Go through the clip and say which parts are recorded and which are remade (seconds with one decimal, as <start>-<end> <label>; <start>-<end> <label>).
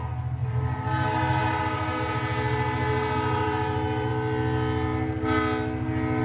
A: 0.0-0.4 recorded; 0.4-4.1 remade; 4.1-6.2 recorded